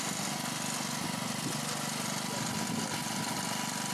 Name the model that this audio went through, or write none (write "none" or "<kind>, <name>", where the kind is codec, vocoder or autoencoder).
none